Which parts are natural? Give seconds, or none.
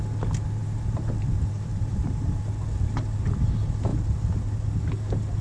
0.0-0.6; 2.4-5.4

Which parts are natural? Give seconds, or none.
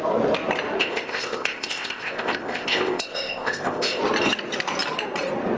0.0-0.8; 4.0-5.6